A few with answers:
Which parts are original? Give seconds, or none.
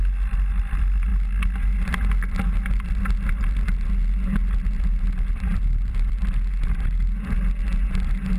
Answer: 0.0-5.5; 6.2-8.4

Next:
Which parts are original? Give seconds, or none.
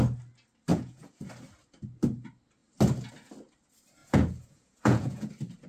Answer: 0.0-0.7; 1.3-4.0; 5.3-5.7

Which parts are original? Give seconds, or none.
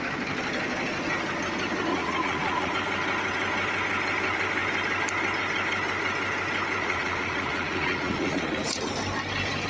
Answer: 0.0-1.9; 2.7-6.8; 8.9-9.7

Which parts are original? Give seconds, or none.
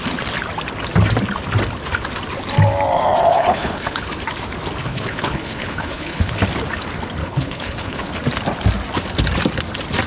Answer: 0.0-3.3; 4.0-4.8; 6.3-7.2; 8.2-10.1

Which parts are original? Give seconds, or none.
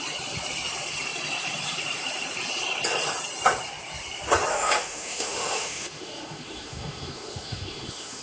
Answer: 0.0-4.5